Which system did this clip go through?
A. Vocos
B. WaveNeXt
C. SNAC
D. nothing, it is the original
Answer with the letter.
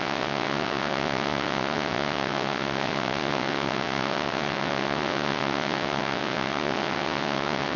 B